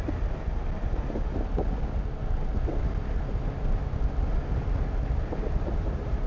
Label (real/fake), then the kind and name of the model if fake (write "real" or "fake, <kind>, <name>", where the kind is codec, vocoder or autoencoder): real